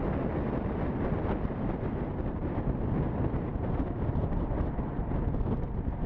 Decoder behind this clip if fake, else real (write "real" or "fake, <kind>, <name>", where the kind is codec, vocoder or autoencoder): real